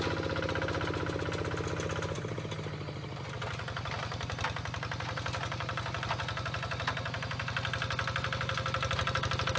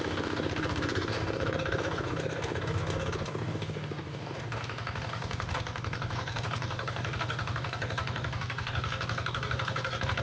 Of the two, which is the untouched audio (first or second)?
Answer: first